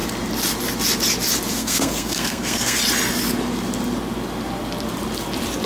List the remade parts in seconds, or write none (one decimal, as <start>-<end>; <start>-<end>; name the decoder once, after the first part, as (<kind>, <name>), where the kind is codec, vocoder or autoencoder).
1.5-2.8 (codec, SNAC)